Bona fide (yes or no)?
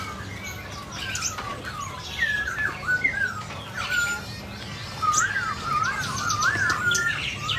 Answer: yes